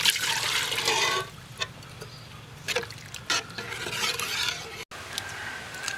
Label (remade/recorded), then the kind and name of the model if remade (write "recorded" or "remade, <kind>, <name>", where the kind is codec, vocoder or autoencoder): recorded